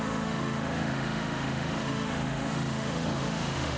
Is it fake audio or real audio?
fake